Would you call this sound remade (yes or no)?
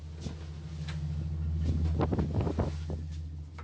no